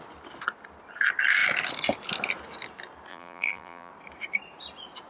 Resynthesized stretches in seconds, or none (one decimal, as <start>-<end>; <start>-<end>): 3.1-3.9